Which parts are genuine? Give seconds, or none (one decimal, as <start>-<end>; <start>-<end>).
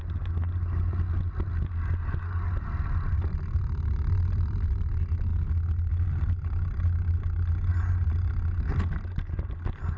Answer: 0.0-10.0